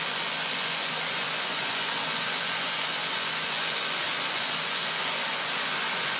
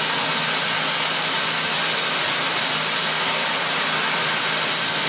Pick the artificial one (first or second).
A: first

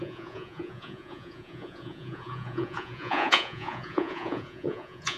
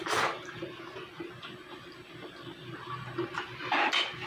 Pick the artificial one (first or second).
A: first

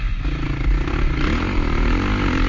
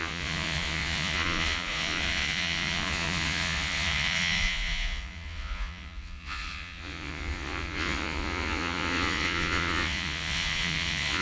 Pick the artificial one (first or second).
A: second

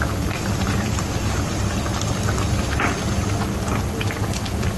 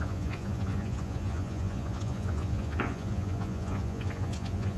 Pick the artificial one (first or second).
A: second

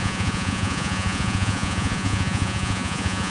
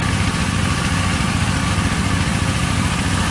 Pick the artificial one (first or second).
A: first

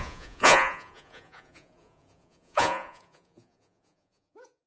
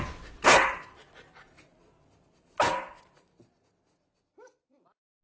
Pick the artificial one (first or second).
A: first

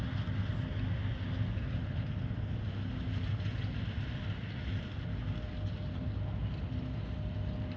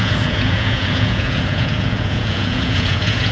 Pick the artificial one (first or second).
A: second